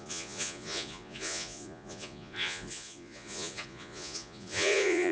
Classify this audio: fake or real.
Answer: fake